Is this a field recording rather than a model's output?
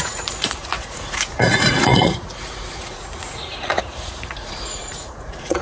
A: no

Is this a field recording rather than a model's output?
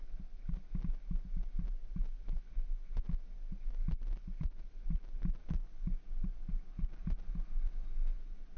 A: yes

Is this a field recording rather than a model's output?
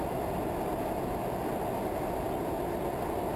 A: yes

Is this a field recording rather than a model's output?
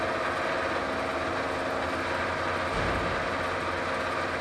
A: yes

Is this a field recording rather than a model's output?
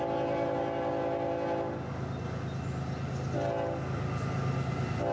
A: yes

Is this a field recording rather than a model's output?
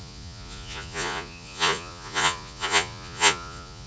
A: no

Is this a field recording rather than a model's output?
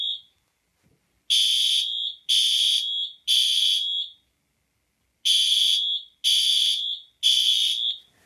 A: yes